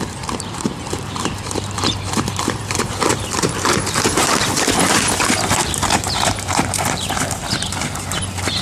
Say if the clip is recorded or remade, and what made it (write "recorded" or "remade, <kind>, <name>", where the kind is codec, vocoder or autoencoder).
remade, vocoder, BigVGAN v2